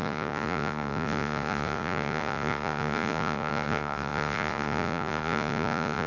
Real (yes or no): no